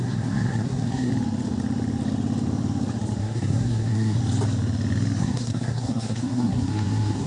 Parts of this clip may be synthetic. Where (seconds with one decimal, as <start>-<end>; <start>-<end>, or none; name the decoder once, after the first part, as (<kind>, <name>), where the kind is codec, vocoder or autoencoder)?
0.0-1.1 (codec, SNAC); 3.2-4.2; 5.2-7.3